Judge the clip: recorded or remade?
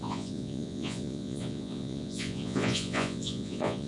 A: remade